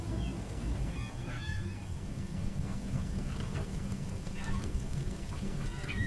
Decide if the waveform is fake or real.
fake